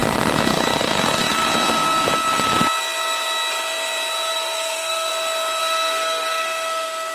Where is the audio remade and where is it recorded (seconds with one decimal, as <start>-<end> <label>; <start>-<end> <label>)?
0.0-4.3 recorded; 4.3-5.1 remade; 5.1-5.6 recorded; 5.6-7.1 remade